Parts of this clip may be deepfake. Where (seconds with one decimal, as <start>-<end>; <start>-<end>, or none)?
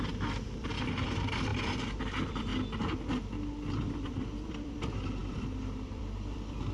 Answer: 0.0-2.5; 3.9-6.7